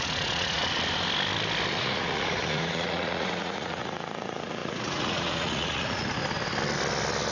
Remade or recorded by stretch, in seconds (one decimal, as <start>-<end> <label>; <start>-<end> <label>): 0.0-0.6 remade; 0.6-1.7 recorded; 1.7-6.2 remade; 6.2-7.3 recorded